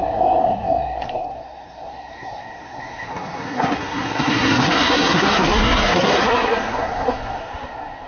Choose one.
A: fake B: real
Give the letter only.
A